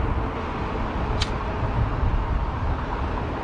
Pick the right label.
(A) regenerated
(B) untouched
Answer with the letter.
B